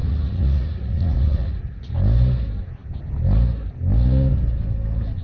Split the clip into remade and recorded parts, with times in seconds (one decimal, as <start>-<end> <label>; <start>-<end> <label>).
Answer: 0.0-1.9 remade; 1.9-5.2 recorded